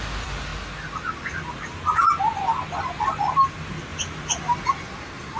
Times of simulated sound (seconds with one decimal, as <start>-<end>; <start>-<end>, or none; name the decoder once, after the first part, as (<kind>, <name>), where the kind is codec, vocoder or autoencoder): none